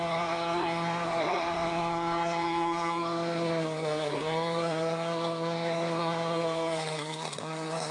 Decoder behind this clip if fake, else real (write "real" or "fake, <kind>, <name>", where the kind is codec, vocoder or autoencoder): fake, codec, SNAC